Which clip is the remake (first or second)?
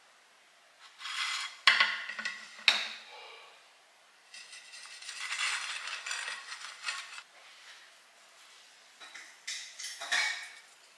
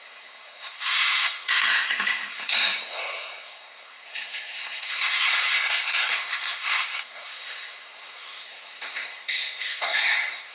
second